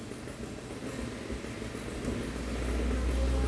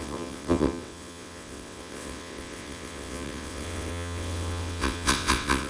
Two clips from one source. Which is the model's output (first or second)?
second